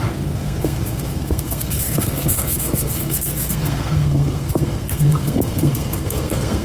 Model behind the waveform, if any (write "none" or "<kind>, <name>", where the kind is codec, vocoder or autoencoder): codec, SNAC